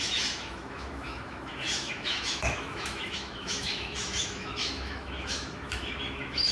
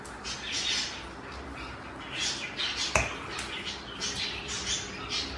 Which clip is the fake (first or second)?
first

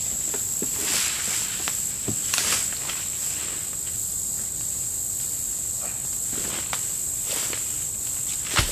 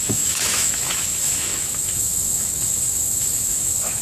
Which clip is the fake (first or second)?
second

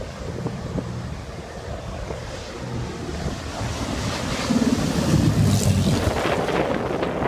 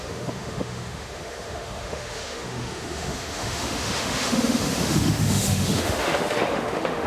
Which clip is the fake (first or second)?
second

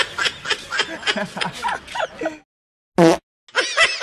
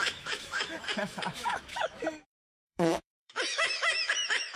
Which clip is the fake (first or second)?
second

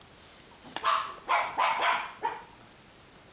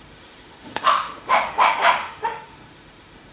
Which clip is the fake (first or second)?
second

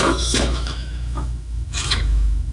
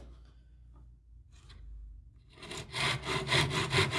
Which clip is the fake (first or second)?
first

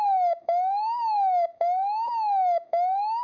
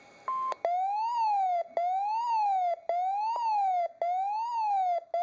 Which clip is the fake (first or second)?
first